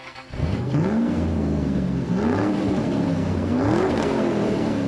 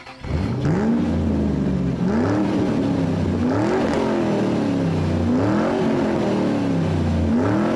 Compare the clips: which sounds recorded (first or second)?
second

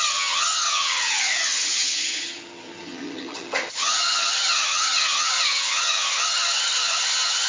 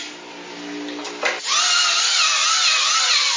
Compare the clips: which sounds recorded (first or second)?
second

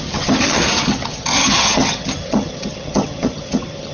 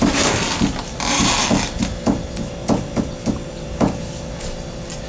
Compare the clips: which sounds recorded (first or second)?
second